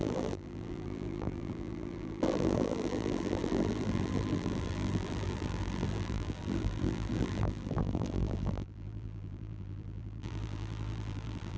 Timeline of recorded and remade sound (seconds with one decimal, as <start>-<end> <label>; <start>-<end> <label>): 0.0-11.6 remade